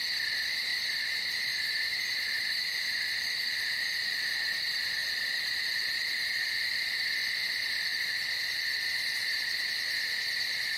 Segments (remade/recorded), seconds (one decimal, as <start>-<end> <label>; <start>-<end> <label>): 0.0-0.7 recorded; 0.7-3.2 remade; 3.2-5.0 recorded; 5.0-6.5 remade; 6.5-10.8 recorded